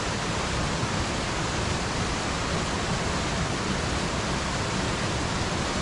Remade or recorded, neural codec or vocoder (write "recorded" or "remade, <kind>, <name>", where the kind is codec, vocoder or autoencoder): recorded